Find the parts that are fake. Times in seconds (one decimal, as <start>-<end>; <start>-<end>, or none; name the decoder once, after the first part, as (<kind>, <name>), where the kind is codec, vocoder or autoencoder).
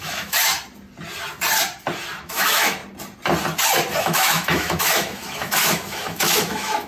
0.0-0.5 (autoencoder, DAC-VAE); 2.2-2.8; 4.0-6.9